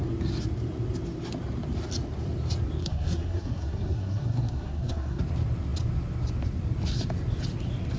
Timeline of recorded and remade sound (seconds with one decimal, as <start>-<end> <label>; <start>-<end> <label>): 0.0-2.8 recorded; 2.8-5.2 remade; 5.2-8.0 recorded